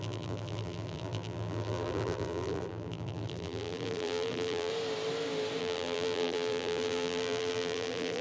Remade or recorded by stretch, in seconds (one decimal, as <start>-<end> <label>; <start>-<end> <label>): 0.0-4.7 remade; 4.7-5.6 recorded; 5.6-8.2 remade